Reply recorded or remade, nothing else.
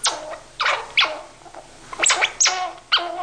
recorded